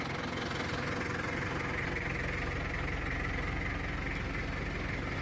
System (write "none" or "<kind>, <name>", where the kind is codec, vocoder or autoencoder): none